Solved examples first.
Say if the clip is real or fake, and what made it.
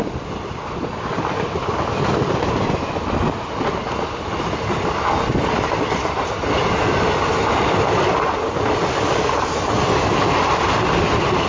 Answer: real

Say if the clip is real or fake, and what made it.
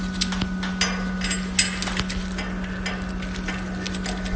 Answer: real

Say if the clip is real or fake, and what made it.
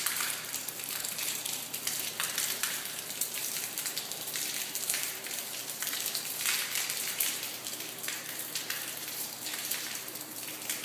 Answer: fake, vocoder, BigVGAN v2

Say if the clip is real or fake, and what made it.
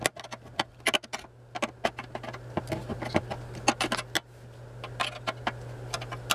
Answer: real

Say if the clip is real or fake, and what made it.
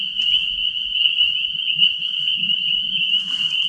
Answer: real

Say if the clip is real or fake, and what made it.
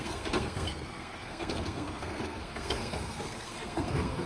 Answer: fake, codec, SNAC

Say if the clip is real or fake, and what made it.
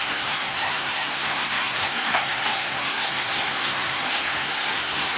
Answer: fake, codec, SNAC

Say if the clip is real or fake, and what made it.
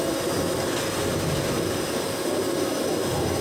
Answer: real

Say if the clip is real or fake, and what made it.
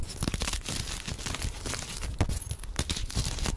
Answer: real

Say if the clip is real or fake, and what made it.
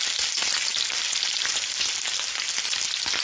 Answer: real